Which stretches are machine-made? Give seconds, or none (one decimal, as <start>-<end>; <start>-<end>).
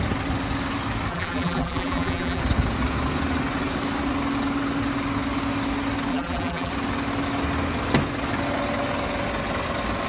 1.1-2.4; 6.1-6.7